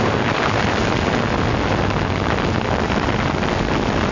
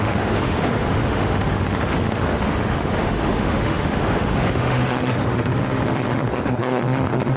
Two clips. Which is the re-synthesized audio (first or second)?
second